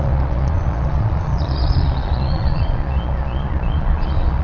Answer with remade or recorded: remade